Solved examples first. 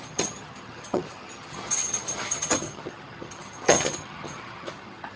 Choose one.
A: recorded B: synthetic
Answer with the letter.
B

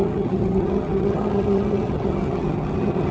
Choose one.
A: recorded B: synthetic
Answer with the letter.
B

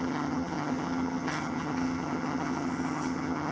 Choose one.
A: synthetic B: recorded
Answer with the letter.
A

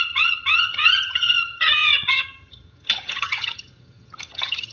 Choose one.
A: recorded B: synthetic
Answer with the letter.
B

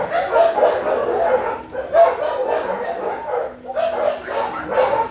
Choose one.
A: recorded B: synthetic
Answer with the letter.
A